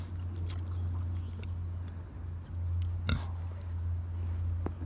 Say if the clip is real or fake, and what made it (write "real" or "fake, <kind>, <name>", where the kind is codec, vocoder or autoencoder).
real